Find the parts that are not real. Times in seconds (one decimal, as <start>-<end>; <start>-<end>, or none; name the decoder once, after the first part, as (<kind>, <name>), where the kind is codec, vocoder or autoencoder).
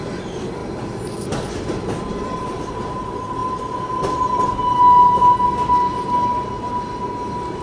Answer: 0.6-2.7 (vocoder, BigVGAN v2)